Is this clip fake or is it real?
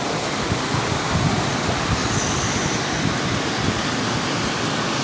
real